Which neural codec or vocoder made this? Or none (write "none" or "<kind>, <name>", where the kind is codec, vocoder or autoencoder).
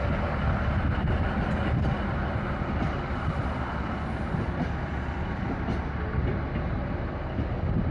none